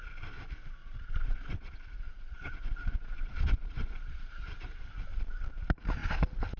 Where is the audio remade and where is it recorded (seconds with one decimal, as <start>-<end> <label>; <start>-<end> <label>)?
0.0-0.8 recorded; 0.8-4.8 remade; 4.8-6.6 recorded